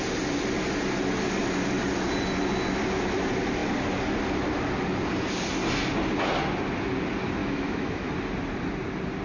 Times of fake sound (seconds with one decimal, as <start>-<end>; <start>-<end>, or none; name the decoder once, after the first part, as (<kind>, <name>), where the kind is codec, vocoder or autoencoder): 7.4-8.1 (autoencoder, DAC-VAE)